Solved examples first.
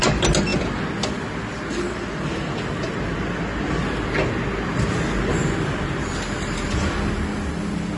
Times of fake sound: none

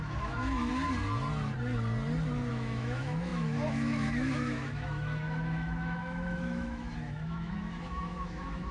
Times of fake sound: 0.0-0.7 (autoencoder, DAC-VAE); 2.5-8.7

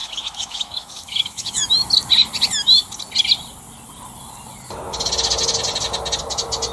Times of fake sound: 0.0-1.7 (autoencoder, DAC-VAE)

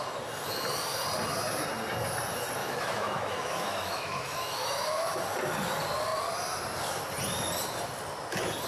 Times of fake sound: 2.6-5.1 (autoencoder, DAC-VAE)

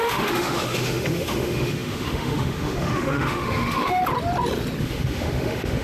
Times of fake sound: 0.0-4.0 (autoencoder, DAC-VAE); 4.8-5.8